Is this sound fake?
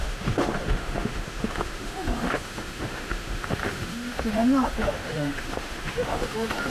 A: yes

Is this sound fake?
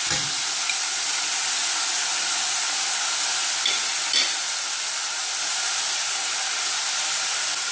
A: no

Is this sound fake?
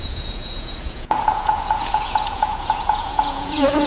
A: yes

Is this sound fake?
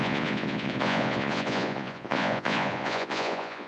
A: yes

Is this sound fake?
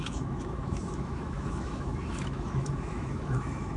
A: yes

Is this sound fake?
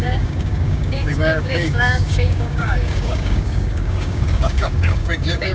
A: yes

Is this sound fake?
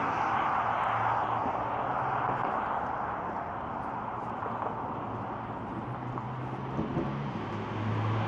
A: no